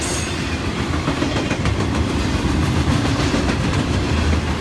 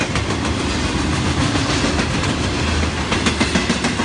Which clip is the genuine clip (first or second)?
second